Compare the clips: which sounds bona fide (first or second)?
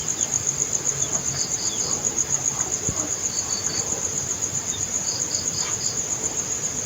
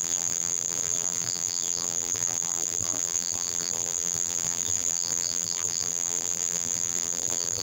first